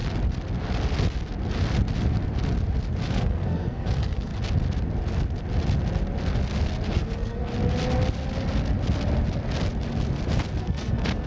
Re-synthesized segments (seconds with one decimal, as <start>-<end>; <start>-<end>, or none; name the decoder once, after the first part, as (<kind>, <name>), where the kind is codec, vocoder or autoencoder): 3.1-4.3 (codec, SNAC); 6.9-7.5; 10.6-11.3